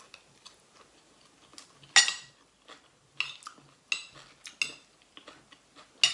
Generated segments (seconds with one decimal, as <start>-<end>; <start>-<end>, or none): none